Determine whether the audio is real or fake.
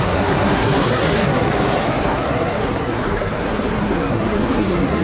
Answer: fake